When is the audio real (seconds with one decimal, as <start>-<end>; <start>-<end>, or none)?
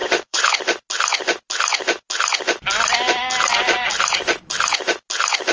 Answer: 0.5-5.5